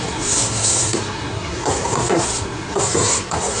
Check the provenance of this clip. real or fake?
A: fake